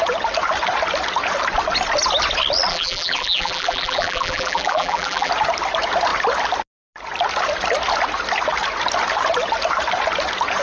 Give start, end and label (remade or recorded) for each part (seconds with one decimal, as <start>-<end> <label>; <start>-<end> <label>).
0.0-2.7 recorded; 2.7-5.3 remade; 5.3-10.6 recorded